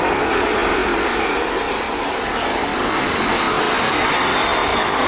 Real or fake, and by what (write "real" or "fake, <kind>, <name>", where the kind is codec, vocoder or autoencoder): real